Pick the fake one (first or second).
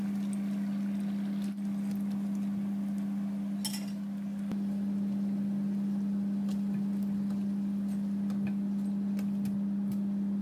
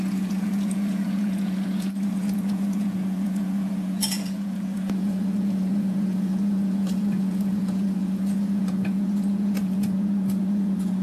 second